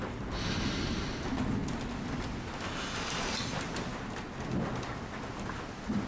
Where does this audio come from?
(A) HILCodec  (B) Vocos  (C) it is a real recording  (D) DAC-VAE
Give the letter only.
C